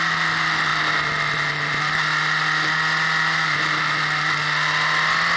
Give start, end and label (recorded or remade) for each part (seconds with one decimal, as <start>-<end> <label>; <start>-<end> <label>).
0.0-5.4 recorded